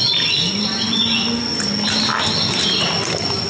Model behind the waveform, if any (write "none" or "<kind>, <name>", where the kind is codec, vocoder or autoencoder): none